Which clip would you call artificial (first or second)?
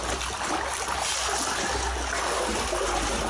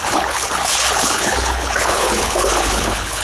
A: second